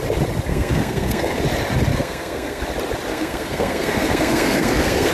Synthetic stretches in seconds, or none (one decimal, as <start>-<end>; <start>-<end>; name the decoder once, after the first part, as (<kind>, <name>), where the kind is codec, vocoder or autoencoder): 0.5-1.4 (codec, SNAC); 1.9-2.6; 3.1-5.1

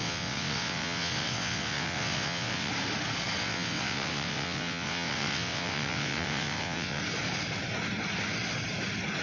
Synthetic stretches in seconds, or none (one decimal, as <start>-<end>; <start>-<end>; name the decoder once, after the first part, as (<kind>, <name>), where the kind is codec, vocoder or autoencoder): 0.0-2.7 (vocoder, WaveNeXt); 3.4-7.0

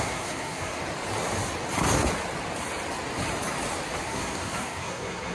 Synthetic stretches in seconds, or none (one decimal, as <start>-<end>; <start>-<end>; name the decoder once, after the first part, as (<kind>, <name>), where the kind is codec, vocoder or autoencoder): 0.0-0.8 (codec, SNAC); 4.0-5.3

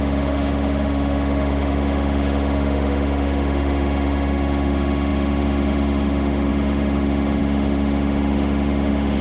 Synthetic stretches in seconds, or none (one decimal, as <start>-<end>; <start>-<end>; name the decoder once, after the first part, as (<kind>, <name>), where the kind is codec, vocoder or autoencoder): 0.0-9.2 (autoencoder, DAC-VAE)

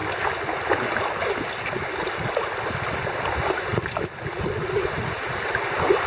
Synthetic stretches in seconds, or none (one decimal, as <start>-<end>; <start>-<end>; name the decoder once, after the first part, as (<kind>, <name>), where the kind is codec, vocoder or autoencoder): none

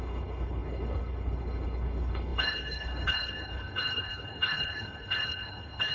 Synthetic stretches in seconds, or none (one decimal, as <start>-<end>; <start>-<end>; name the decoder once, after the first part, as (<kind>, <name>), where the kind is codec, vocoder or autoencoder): 0.0-5.9 (codec, HILCodec)